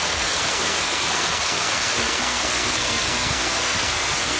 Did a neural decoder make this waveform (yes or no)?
yes